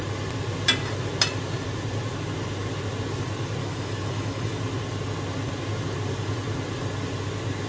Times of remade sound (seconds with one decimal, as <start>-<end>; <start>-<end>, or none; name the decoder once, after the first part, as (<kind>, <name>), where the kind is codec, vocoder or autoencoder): 3.6-4.6 (autoencoder, DAC-VAE)

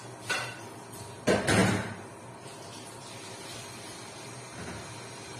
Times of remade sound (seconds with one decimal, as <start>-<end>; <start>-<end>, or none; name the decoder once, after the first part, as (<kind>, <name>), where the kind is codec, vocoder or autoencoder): none

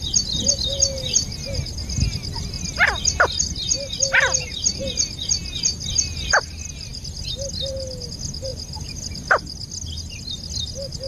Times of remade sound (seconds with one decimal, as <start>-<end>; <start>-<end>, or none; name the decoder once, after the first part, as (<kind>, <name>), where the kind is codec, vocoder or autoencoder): none

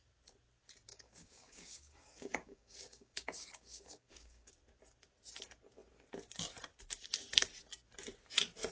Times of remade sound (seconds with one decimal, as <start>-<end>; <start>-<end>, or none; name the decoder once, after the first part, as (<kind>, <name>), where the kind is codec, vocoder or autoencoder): 0.9-4.5 (codec, DAC)